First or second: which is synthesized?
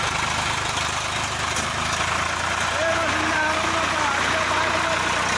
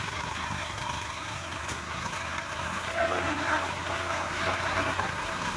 second